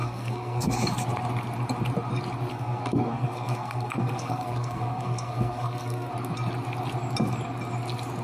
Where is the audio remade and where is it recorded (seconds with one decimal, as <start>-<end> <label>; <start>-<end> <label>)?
0.0-0.7 remade; 0.7-2.5 recorded; 2.5-6.1 remade; 6.1-8.2 recorded